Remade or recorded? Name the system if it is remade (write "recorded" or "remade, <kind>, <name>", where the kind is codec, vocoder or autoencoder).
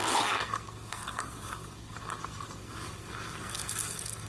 remade, codec, SNAC